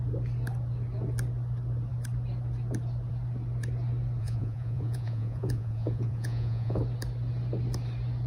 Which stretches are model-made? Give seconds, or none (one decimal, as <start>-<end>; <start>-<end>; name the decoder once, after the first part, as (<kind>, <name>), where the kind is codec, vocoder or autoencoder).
4.2-6.8 (vocoder, Vocos)